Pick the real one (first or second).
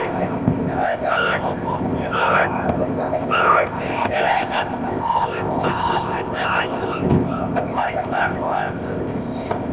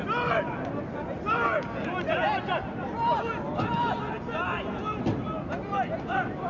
second